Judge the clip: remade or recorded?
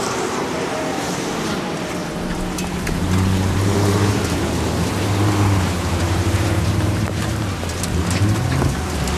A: remade